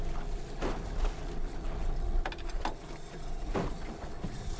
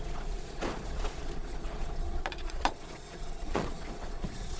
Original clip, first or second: first